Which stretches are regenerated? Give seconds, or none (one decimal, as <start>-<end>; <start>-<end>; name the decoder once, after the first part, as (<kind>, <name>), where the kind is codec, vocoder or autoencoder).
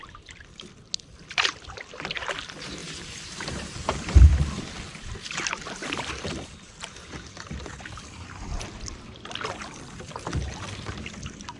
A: 2.8-4.7 (vocoder, BigVGAN v2)